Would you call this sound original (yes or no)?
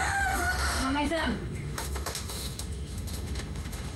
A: no